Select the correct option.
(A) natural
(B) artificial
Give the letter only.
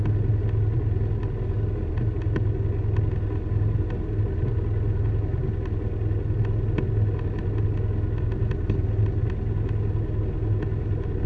A